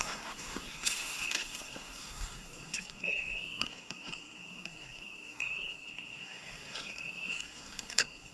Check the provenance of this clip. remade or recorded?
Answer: remade